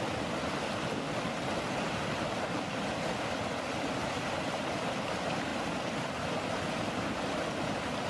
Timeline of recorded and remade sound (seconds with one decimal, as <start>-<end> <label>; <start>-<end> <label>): 0.0-8.1 recorded

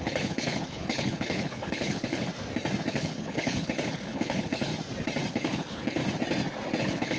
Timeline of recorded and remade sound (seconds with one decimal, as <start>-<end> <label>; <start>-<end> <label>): 0.0-2.3 remade; 2.3-2.9 recorded; 2.9-4.7 remade; 4.7-5.3 recorded; 5.3-6.0 remade; 6.0-6.8 recorded; 6.8-7.2 remade